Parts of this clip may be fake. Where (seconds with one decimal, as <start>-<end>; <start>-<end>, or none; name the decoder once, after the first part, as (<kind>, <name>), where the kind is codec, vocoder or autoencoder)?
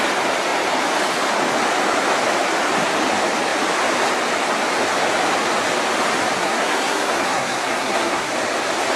6.4-8.3 (codec, SNAC)